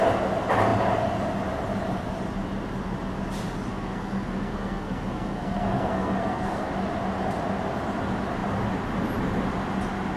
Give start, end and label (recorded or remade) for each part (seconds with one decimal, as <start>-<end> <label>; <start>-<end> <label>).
0.0-3.7 recorded; 3.7-6.7 remade; 6.7-10.2 recorded